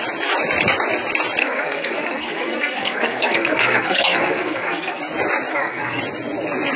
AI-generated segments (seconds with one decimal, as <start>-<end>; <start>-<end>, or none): 1.4-5.0; 5.5-6.0